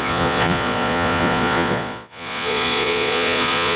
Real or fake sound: fake